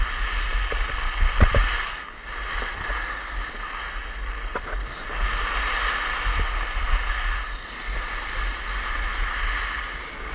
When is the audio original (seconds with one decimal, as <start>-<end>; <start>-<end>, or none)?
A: 0.0-10.3

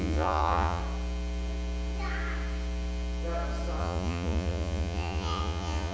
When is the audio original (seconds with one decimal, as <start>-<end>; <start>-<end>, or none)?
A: 0.8-3.8

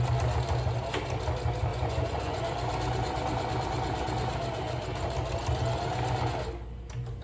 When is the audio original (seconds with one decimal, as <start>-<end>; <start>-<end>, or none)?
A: 0.0-1.7; 2.4-7.2

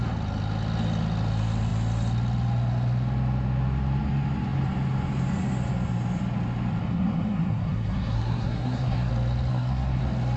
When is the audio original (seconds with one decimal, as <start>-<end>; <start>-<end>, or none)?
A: 0.0-6.8; 9.1-9.5; 10.0-10.4

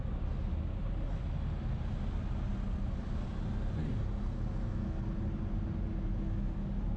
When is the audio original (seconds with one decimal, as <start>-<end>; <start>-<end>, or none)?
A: 0.0-7.0

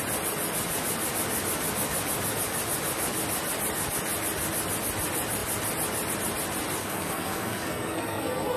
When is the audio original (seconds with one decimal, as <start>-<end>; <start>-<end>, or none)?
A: 0.0-6.8

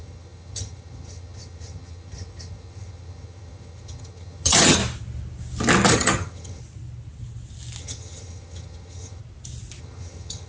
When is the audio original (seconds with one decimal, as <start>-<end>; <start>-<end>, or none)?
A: 4.8-5.9; 6.6-7.8; 9.2-9.8

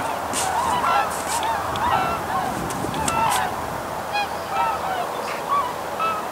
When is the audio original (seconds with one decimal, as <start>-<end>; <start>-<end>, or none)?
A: 0.0-6.3